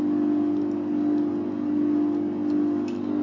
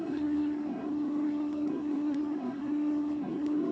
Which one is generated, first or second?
second